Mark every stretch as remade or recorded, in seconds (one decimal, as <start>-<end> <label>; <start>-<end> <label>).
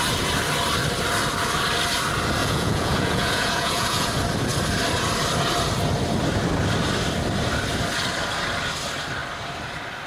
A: 0.0-2.4 recorded; 2.4-4.1 remade; 4.1-10.1 recorded